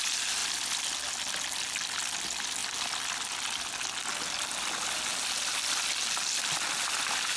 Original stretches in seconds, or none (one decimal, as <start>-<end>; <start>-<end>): 0.0-7.4